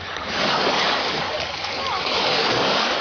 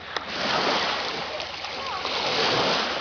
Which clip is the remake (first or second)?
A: first